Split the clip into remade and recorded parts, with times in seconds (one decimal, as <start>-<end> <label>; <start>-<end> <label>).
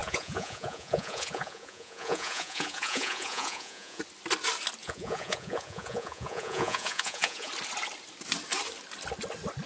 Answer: 0.0-4.0 remade; 4.0-4.8 recorded; 4.8-7.5 remade; 7.5-9.7 recorded